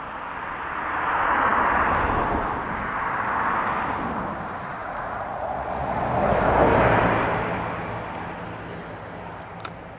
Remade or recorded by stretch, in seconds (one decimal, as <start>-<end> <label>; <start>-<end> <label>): 0.0-4.8 recorded; 4.8-6.0 remade; 6.0-10.0 recorded